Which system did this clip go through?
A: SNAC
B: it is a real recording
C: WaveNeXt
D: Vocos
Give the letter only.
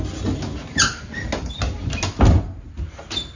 B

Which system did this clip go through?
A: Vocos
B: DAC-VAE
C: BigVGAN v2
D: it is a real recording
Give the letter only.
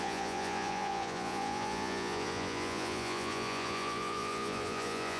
A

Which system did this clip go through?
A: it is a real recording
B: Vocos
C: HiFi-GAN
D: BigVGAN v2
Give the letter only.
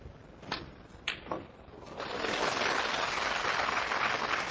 A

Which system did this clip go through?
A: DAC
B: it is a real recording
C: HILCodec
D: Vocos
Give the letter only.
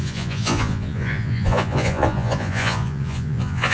D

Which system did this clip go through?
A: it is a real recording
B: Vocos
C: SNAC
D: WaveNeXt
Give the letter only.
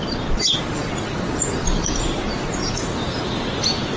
A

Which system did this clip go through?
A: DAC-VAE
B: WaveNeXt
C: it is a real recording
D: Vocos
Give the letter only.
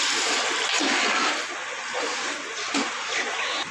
C